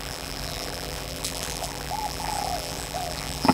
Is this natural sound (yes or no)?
no